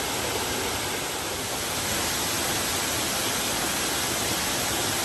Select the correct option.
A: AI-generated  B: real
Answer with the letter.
B